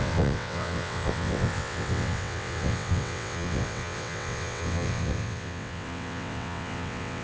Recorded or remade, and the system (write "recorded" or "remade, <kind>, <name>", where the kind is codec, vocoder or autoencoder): remade, vocoder, WaveNeXt